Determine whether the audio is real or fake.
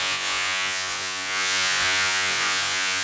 fake